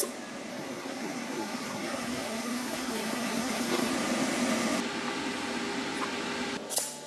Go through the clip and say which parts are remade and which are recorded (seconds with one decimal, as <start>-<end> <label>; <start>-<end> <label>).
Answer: 0.0-0.5 recorded; 0.5-3.9 remade; 3.9-7.1 recorded